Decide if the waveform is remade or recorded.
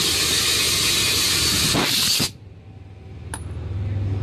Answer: recorded